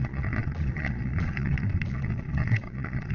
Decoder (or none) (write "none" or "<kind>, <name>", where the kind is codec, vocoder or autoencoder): vocoder, Vocos